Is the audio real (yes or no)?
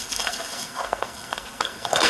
no